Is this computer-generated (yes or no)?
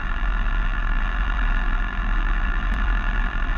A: yes